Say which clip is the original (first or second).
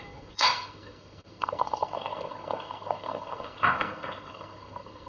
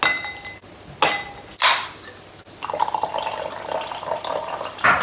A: second